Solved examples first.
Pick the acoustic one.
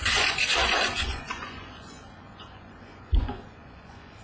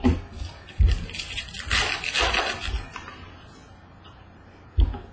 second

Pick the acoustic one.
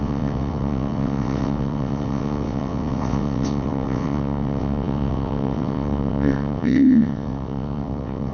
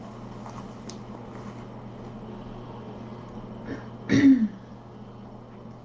second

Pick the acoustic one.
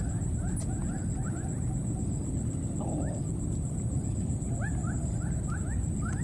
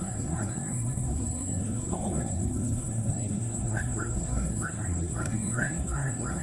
first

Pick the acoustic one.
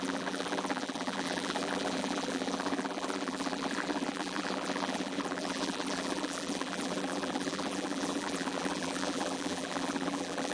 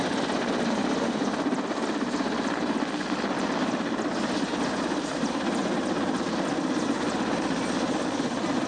second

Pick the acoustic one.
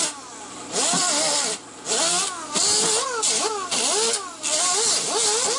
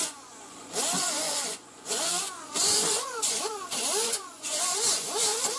first